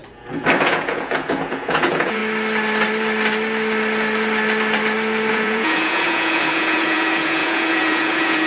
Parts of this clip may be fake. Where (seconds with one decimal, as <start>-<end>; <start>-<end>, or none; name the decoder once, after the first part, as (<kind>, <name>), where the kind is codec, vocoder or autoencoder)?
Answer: 0.6-2.2 (vocoder, Vocos); 5.3-8.5